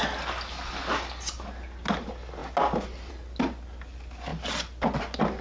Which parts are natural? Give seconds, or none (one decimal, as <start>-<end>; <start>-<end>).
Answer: 0.0-5.4